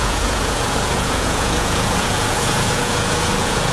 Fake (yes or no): yes